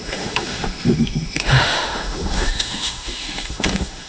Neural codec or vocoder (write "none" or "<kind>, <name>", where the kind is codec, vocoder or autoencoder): autoencoder, DAC-VAE